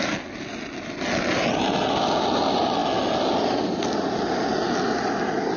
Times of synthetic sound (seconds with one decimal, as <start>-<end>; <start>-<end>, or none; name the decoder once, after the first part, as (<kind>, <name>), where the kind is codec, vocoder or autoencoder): none